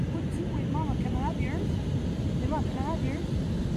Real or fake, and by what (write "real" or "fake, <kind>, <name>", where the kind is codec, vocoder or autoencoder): real